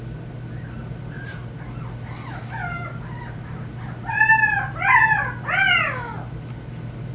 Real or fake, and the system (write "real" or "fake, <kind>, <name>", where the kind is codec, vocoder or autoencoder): real